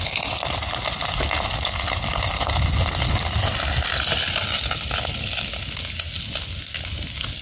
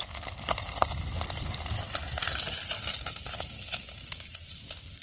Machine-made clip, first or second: second